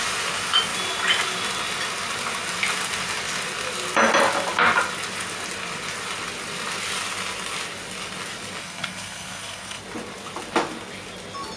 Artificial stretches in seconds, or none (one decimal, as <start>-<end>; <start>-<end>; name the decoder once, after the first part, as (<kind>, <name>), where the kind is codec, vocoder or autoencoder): 8.6-9.8 (codec, SNAC)